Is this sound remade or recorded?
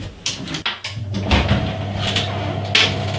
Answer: recorded